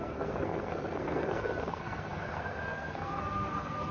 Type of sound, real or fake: fake